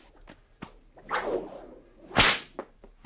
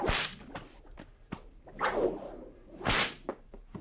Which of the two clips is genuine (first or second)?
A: first